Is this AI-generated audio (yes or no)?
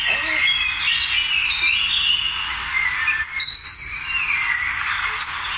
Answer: no